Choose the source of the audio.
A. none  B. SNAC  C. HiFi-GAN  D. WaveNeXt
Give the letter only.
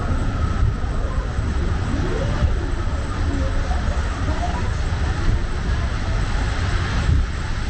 A